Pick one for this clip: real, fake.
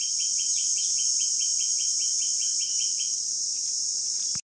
real